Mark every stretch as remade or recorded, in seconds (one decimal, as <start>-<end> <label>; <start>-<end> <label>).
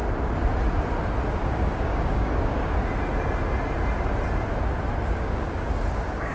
0.0-1.5 recorded; 1.5-2.8 remade; 2.8-5.0 recorded; 5.0-6.3 remade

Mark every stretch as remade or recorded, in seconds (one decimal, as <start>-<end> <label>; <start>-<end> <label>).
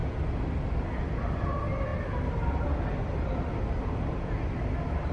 0.0-5.1 recorded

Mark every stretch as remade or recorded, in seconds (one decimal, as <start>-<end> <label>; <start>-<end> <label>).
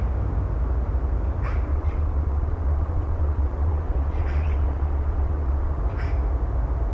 0.0-1.7 recorded; 1.7-5.8 remade; 5.8-6.9 recorded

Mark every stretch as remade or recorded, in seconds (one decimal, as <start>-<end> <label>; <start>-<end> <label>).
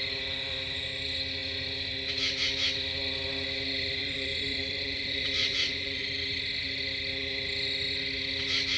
0.0-4.0 recorded; 4.0-6.0 remade; 6.0-8.8 recorded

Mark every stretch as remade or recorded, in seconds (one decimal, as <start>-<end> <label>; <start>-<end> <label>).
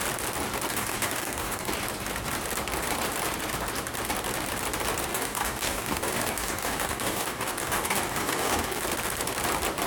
0.0-0.7 recorded; 0.7-1.7 remade; 1.7-5.1 recorded; 5.1-8.8 remade; 8.8-9.9 recorded